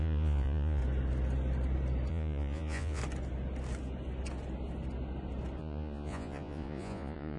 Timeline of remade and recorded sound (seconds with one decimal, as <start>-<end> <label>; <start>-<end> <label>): 0.0-0.8 remade; 0.8-2.1 recorded; 2.1-3.0 remade; 3.0-5.6 recorded; 5.6-7.4 remade